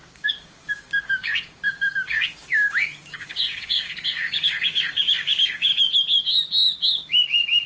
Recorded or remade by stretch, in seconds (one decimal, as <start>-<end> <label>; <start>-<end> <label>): 0.0-5.7 remade; 5.7-6.9 recorded; 6.9-7.7 remade

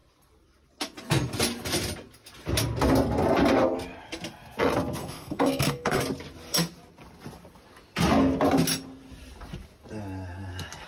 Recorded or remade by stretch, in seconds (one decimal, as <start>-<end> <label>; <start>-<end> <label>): 0.0-5.0 recorded; 5.0-6.0 remade; 6.0-10.9 recorded

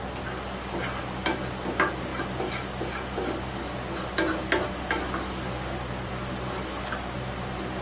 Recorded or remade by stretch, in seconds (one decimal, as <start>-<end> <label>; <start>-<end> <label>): 0.0-7.8 recorded

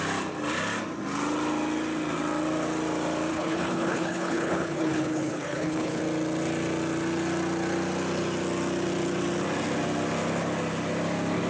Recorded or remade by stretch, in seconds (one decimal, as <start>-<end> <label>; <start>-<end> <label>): 0.0-3.3 recorded; 3.3-6.0 remade; 6.0-11.5 recorded

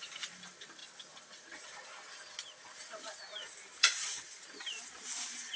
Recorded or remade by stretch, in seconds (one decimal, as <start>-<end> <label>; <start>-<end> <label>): 0.0-0.8 remade; 0.8-2.6 recorded; 2.6-5.6 remade